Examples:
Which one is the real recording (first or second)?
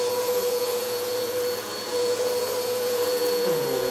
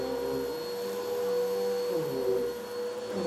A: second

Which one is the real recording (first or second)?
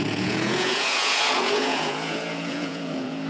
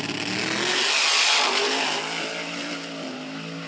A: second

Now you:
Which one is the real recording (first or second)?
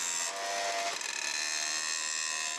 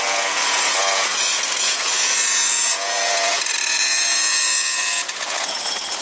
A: first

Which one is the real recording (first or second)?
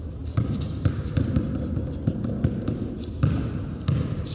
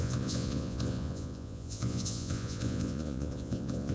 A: first